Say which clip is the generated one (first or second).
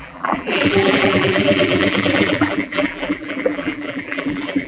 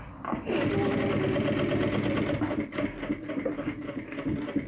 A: first